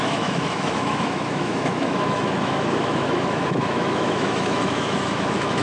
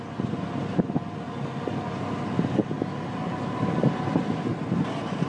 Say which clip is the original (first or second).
second